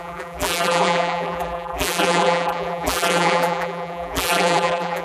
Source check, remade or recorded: remade